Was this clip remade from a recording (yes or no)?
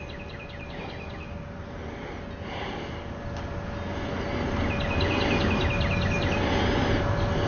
no